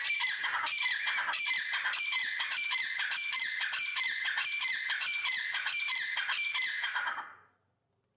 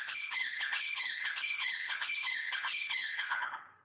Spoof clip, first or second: second